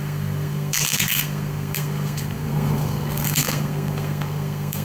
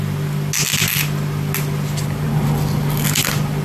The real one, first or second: second